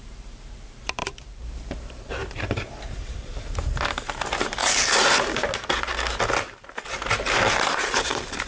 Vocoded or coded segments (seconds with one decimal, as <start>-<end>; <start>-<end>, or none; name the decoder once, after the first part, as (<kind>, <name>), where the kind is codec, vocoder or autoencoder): 0.0-4.6 (vocoder, BigVGAN v2); 7.6-8.5

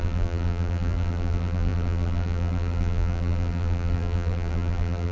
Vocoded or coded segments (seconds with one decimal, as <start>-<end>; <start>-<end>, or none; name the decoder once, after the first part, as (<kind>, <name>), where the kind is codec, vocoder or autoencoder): 0.0-5.1 (vocoder, BigVGAN v2)

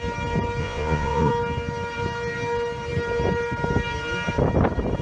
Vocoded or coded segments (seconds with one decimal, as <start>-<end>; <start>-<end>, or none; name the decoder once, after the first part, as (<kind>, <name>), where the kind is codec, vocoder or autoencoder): 0.6-1.3 (vocoder, Vocos)